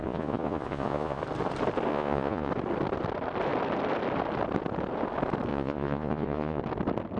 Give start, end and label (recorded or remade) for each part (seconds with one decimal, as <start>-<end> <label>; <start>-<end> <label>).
0.0-1.2 remade; 1.2-1.9 recorded; 1.9-2.5 remade; 2.5-5.5 recorded; 5.5-6.6 remade; 6.6-7.2 recorded